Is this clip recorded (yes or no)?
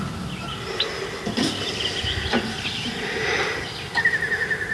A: yes